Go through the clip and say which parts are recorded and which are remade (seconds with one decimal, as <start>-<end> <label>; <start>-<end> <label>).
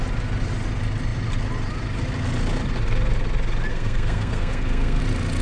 0.0-3.7 recorded; 3.7-5.0 remade; 5.0-5.4 recorded